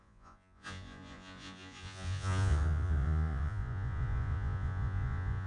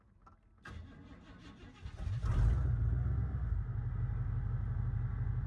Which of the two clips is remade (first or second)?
first